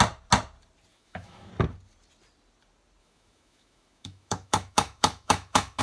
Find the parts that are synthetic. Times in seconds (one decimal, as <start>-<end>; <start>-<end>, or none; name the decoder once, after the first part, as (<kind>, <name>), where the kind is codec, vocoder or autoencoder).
0.9-1.5 (autoencoder, DAC-VAE); 3.0-5.8